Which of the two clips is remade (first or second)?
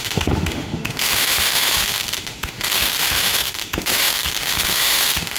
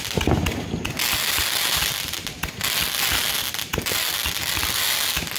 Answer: first